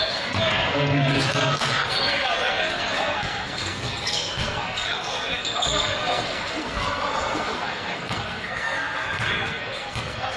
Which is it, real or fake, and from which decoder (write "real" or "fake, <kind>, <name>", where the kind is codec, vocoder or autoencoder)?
fake, codec, SNAC